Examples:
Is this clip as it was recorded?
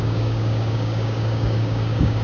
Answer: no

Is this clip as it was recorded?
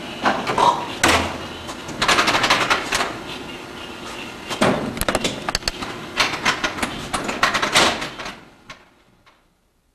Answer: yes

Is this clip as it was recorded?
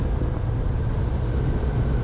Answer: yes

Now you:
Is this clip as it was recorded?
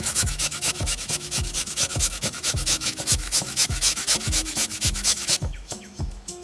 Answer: no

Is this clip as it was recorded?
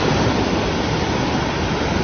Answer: yes